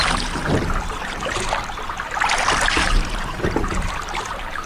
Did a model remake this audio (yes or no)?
no